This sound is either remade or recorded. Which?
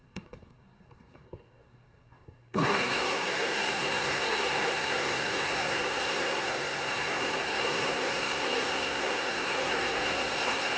remade